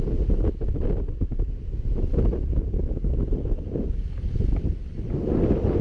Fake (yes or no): no